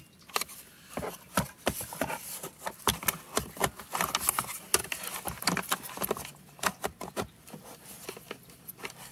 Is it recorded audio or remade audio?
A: recorded